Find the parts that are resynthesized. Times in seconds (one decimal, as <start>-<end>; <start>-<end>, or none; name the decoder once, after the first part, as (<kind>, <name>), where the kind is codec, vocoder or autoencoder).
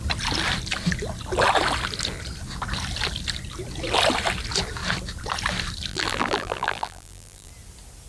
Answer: 5.9-7.5 (vocoder, BigVGAN v2)